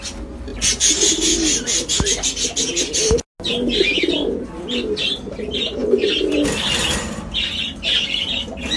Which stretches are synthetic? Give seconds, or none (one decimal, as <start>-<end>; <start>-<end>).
none